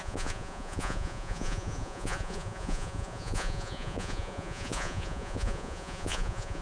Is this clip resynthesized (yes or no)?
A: yes